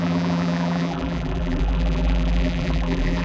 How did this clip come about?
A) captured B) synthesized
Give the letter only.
B